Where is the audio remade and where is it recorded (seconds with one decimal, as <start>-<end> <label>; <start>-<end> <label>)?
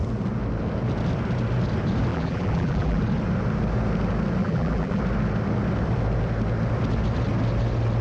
0.0-2.1 recorded; 2.1-3.0 remade; 3.0-4.4 recorded; 4.4-5.0 remade; 5.0-8.0 recorded